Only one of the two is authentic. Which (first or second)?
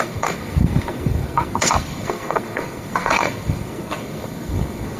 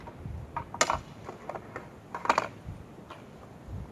second